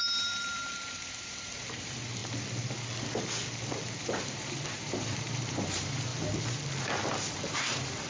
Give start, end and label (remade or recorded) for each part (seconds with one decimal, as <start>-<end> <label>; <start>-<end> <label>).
0.0-2.2 remade; 2.2-4.0 recorded; 4.0-6.1 remade; 6.1-7.3 recorded; 7.3-8.1 remade